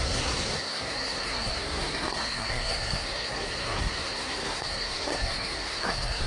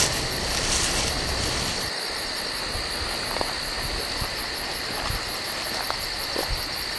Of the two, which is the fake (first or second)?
first